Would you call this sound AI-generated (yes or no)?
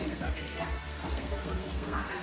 yes